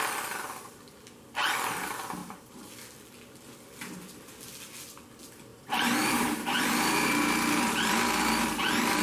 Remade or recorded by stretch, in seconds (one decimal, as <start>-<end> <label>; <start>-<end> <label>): 0.0-2.2 recorded; 2.2-2.7 remade; 2.7-5.5 recorded; 5.5-6.6 remade; 6.6-9.0 recorded